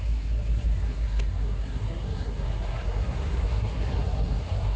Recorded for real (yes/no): no